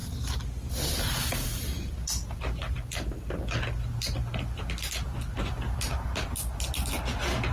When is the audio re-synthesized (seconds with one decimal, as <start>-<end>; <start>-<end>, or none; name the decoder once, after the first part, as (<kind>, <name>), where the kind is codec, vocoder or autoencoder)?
none